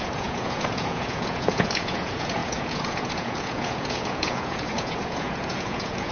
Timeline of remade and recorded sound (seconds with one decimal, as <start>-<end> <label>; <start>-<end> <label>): 0.0-6.1 remade